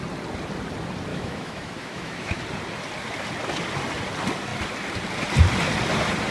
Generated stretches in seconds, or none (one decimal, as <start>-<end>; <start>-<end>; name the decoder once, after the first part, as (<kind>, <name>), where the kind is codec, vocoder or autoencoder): 1.1-2.4 (autoencoder, DAC-VAE)